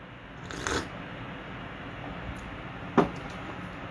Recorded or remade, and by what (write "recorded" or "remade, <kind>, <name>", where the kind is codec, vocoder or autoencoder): recorded